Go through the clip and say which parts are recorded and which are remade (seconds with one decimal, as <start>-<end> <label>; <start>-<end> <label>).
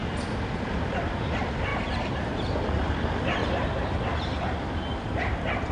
0.0-1.7 recorded; 1.7-2.5 remade; 2.5-3.4 recorded; 3.4-3.9 remade; 3.9-5.7 recorded